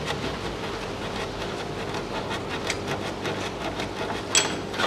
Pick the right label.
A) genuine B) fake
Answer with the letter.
A